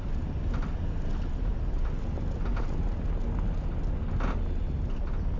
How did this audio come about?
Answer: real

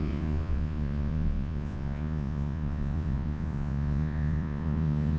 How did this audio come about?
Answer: fake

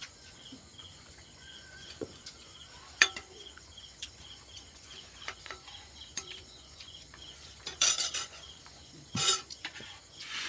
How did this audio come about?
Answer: fake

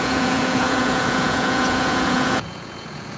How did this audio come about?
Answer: fake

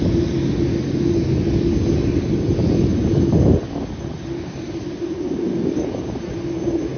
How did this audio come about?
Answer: real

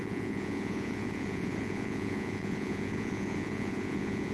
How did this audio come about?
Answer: fake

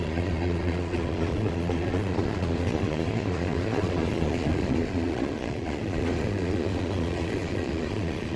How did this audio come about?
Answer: fake